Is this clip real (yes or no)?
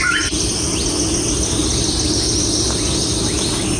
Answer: yes